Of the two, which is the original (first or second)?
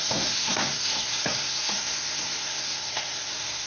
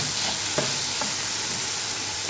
second